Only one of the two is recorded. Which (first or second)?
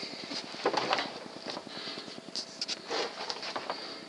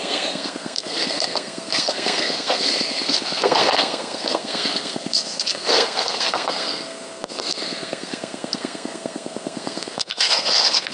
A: first